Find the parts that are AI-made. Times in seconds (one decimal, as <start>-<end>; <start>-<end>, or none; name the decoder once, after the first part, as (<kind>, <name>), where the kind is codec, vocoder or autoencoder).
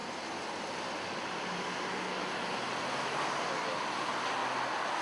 none